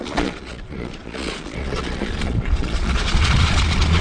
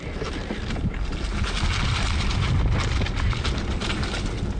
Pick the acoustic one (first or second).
second